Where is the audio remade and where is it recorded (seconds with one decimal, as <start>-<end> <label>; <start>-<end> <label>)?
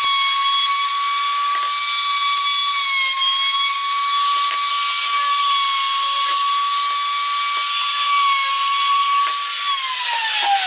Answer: 0.0-10.7 recorded